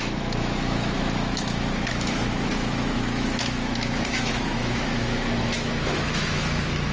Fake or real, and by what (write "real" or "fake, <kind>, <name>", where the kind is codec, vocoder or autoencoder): fake, autoencoder, DAC-VAE